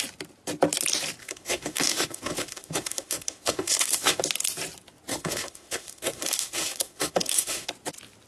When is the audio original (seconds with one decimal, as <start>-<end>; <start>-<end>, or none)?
0.0-1.2; 4.2-5.1; 7.7-8.3